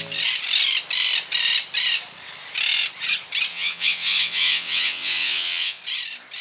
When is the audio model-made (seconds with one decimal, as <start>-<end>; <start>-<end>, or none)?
3.5-5.8